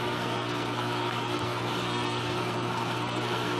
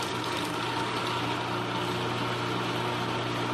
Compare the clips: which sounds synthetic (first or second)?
first